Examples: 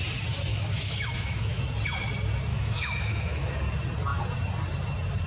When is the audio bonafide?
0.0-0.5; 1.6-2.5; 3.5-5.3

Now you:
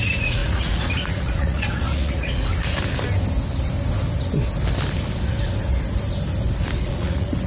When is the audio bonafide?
2.5-6.8

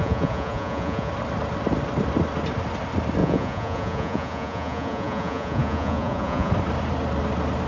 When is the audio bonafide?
1.1-3.2; 6.5-7.7